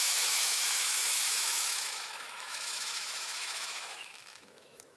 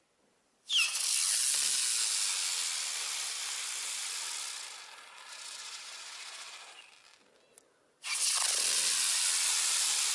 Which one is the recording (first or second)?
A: second